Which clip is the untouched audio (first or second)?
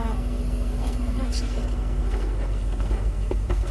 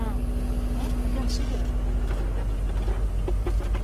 second